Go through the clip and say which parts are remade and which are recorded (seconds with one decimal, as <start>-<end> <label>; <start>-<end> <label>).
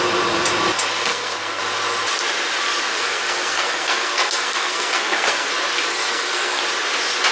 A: 0.0-1.1 recorded; 1.1-1.6 remade; 1.6-2.9 recorded; 2.9-5.5 remade; 5.5-5.9 recorded; 5.9-6.6 remade; 6.6-7.3 recorded